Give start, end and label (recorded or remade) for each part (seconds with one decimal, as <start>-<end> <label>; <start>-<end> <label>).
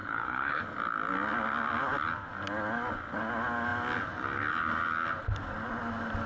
0.0-0.6 remade; 0.6-6.3 recorded